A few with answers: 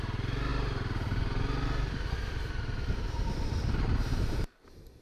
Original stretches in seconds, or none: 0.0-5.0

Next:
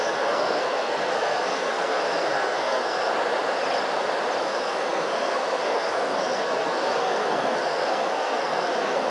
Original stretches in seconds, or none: 3.1-4.4

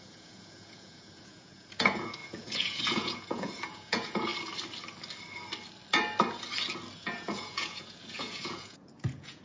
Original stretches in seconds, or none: 4.3-7.0

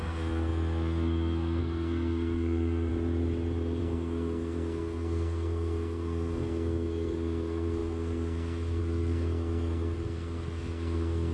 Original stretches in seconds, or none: 2.9-3.8

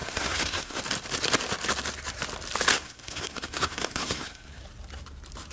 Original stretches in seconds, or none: 0.8-2.7; 4.6-5.5

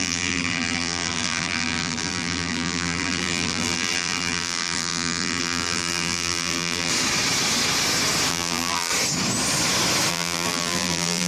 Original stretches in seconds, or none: 6.9-8.3; 8.9-10.1

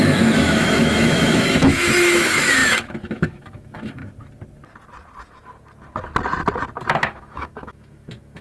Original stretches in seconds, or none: 4.0-7.0